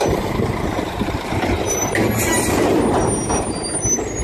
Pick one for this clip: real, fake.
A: real